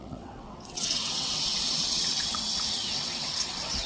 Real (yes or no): no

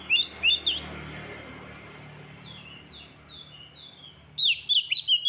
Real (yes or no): yes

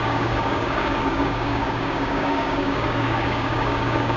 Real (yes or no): no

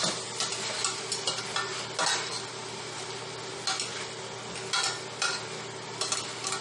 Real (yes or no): yes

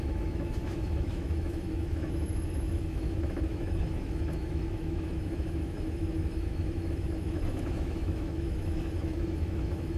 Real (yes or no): no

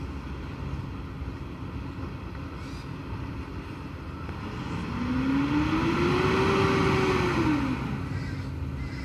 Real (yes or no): yes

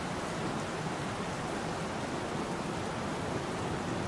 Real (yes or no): yes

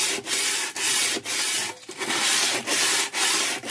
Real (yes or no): yes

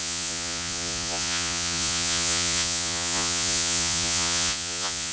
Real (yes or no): no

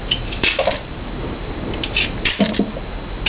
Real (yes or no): yes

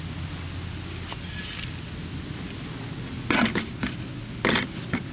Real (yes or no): yes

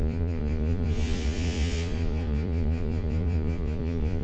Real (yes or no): no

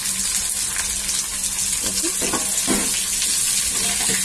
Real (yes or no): yes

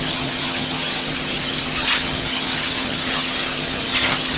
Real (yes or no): no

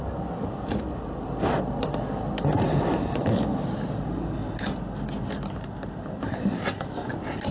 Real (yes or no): yes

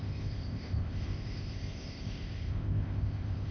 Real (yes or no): no